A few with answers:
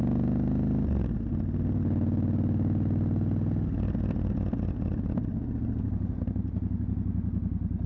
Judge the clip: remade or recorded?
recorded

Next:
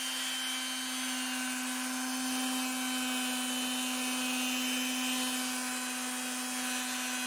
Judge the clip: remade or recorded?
recorded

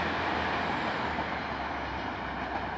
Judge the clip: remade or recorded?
recorded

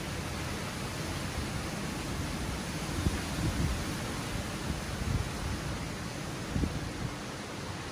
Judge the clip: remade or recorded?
recorded